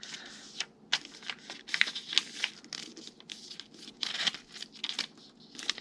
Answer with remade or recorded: recorded